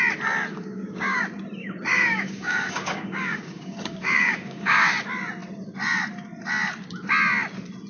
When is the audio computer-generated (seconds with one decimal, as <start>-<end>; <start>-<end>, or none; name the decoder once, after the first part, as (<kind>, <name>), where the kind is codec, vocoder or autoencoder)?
0.5-1.2 (codec, DAC); 1.6-4.9